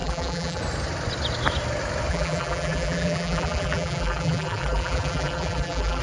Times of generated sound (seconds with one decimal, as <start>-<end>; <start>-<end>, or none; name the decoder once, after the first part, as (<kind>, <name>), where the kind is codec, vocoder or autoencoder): 0.0-0.6 (vocoder, BigVGAN v2); 2.1-6.0